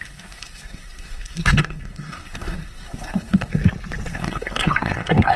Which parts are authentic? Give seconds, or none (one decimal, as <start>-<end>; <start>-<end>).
3.6-4.1